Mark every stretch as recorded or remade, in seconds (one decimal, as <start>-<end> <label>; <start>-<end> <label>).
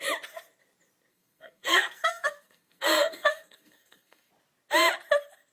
0.0-1.1 recorded; 1.1-4.3 remade; 4.3-5.5 recorded